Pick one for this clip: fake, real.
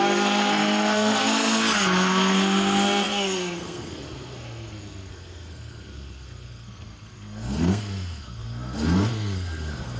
fake